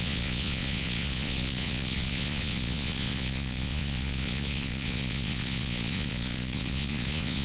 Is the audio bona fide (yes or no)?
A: no